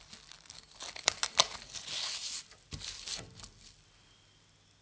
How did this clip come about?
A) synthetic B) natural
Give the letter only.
B